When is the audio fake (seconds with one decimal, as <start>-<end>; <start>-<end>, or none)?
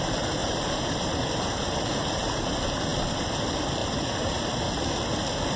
0.4-2.3; 3.8-4.6